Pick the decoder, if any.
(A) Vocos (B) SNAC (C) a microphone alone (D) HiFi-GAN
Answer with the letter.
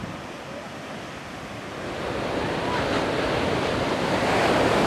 C